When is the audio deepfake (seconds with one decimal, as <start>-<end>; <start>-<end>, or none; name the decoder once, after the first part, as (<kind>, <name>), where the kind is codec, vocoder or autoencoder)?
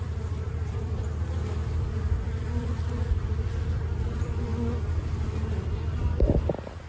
0.0-4.5 (vocoder, BigVGAN v2); 6.3-6.9